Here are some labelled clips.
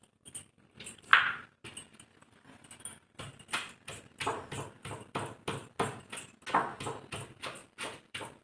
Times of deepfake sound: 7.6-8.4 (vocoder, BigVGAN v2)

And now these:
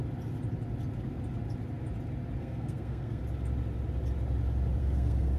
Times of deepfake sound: 2.4-3.2 (codec, SNAC); 4.8-5.4

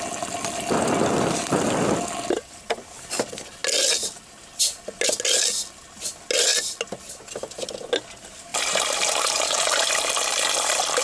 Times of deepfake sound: 8.5-9.9 (vocoder, BigVGAN v2)

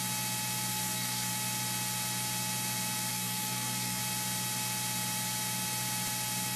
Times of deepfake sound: 0.7-1.3 (codec, SNAC); 3.1-4.0

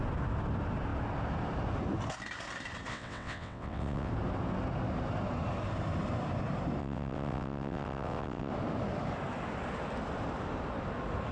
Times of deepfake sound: 2.9-4.1 (vocoder, WaveNeXt); 6.8-8.5

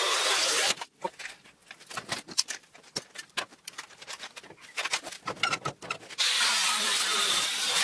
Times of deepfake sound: 1.6-5.5 (vocoder, BigVGAN v2)